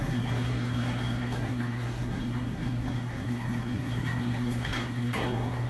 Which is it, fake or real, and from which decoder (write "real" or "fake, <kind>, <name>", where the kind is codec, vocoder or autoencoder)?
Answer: fake, codec, SNAC